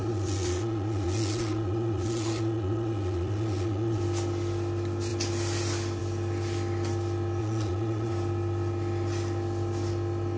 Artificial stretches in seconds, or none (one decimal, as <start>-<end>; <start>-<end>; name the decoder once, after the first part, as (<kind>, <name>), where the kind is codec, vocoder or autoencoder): 0.0-4.0 (vocoder, Vocos); 7.4-8.1